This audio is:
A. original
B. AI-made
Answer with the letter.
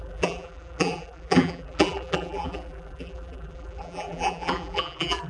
B